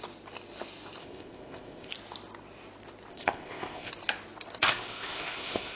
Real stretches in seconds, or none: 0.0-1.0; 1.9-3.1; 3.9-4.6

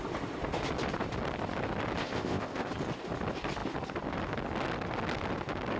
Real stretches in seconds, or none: 0.0-2.0; 2.7-5.8

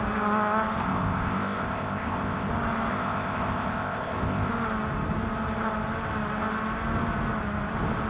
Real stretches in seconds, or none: 0.0-0.8; 2.5-2.9; 4.5-8.1

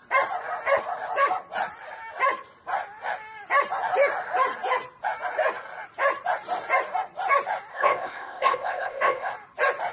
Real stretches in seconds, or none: 0.0-7.7; 9.3-9.9

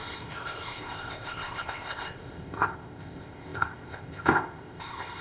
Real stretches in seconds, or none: none

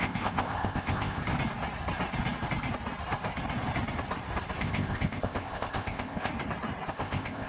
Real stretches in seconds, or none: 1.2-4.6; 6.3-6.9